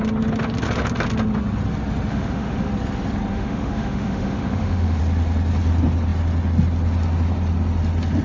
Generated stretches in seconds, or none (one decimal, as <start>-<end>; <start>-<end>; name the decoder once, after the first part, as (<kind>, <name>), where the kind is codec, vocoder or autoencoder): 2.1-2.7 (autoencoder, DAC-VAE); 3.3-5.0